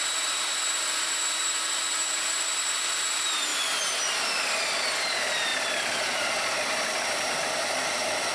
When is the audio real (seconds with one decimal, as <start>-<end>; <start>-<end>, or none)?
none